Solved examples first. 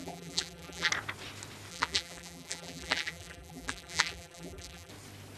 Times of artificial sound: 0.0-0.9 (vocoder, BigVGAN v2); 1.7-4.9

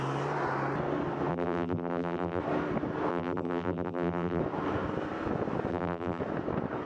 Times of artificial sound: 1.3-2.4 (vocoder, BigVGAN v2); 3.1-4.4; 5.7-6.2